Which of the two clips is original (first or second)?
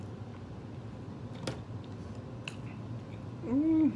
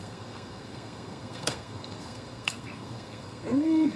first